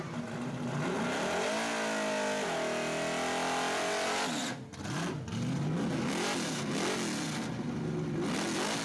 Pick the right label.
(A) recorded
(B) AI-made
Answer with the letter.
A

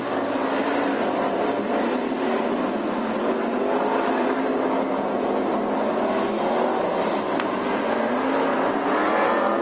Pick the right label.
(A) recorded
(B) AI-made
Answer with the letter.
A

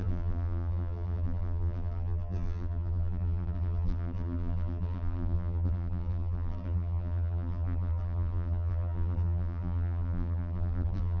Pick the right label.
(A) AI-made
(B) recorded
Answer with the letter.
A